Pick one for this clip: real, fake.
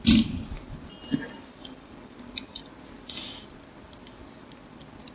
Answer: real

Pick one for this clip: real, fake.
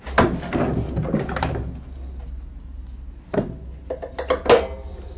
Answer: real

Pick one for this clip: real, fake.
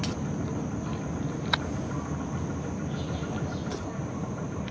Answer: real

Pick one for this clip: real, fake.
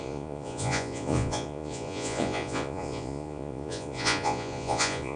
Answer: fake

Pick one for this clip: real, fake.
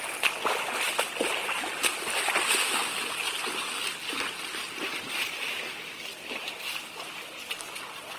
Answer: real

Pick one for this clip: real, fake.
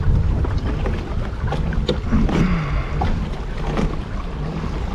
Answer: real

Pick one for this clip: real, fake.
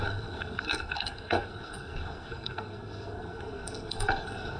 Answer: fake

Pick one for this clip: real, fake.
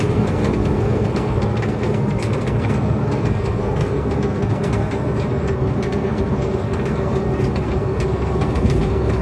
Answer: fake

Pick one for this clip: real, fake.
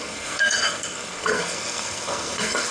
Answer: fake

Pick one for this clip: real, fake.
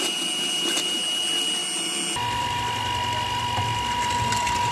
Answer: real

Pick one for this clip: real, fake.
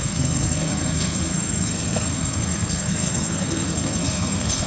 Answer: fake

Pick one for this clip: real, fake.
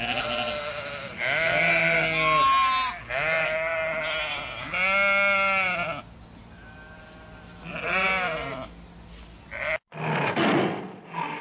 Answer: real